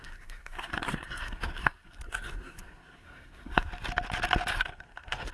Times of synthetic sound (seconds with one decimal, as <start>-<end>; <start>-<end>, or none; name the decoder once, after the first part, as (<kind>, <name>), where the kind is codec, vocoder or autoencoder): 0.0-3.7 (codec, SNAC); 4.5-5.3

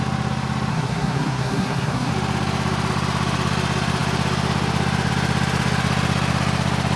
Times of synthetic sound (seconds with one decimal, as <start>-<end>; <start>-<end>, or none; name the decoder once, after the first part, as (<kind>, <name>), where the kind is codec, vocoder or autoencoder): 0.7-2.1 (codec, SNAC)